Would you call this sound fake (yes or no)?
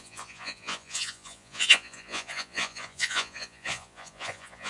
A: yes